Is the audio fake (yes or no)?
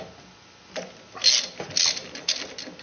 no